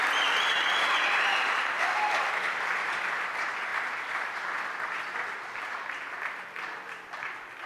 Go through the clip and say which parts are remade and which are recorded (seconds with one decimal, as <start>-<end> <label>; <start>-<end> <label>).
0.0-7.7 remade